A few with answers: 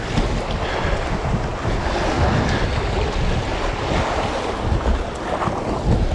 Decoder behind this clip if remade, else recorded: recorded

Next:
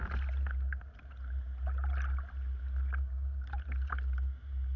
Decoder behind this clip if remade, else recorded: recorded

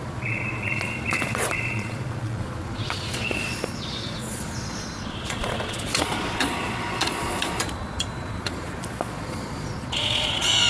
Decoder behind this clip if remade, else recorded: remade, vocoder, Vocos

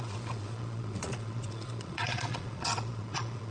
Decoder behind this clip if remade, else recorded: remade, vocoder, Vocos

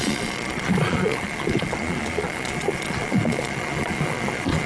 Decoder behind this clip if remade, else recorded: remade, vocoder, Vocos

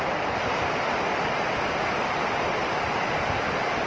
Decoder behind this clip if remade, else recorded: recorded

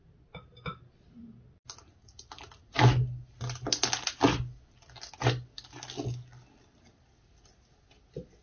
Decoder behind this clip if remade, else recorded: recorded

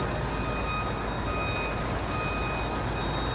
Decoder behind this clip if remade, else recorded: recorded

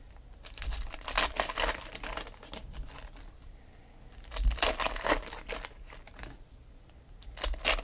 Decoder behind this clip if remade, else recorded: recorded